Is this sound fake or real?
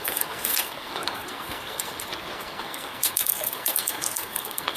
fake